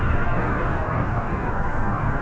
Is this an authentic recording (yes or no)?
no